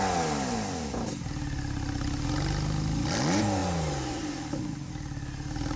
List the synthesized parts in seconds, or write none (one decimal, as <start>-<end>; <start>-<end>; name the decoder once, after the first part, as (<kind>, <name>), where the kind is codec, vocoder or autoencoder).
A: none